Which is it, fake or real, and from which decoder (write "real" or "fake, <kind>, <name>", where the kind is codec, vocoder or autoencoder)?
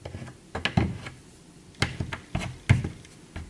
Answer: real